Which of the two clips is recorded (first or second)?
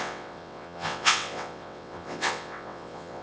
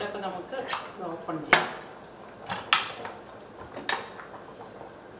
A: second